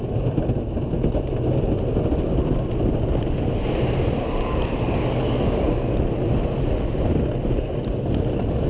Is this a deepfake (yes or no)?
no